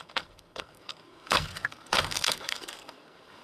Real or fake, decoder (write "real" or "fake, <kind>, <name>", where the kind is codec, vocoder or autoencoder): fake, codec, SNAC